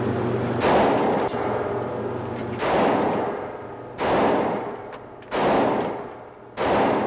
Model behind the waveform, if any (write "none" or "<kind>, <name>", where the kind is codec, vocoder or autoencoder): none